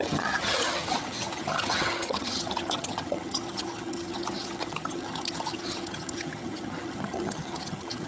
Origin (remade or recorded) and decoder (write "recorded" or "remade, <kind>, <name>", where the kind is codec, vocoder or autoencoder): remade, vocoder, HiFi-GAN